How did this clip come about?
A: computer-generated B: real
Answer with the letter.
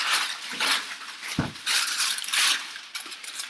A